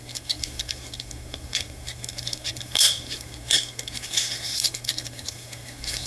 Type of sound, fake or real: fake